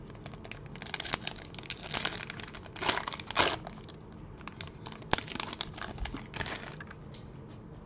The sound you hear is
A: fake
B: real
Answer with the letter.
B